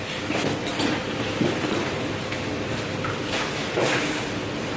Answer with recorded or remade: recorded